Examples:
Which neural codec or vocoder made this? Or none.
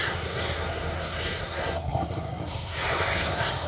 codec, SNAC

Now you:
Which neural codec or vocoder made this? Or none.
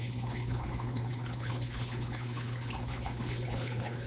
codec, HILCodec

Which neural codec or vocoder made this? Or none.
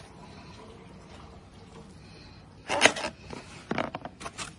none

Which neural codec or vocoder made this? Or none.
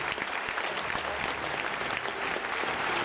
none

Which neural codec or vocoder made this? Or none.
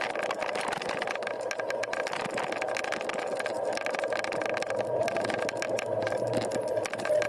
none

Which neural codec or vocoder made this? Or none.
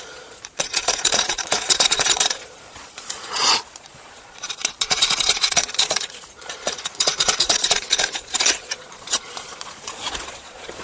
vocoder, Vocos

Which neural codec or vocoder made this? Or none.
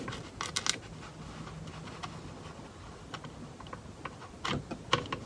none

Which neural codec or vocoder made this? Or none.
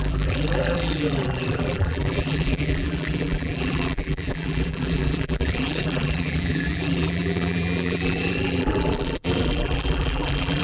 vocoder, BigVGAN v2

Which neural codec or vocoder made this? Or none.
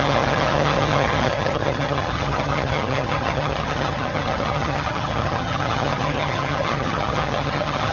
vocoder, HiFi-GAN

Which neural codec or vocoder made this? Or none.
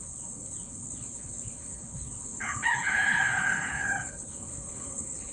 codec, HILCodec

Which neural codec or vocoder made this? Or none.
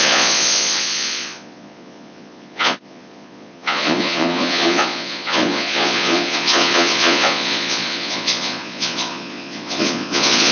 vocoder, Vocos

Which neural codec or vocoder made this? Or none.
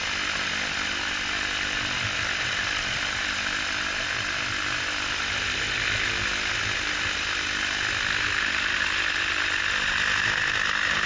none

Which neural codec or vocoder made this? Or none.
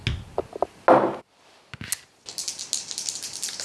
none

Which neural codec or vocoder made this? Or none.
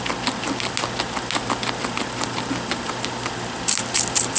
none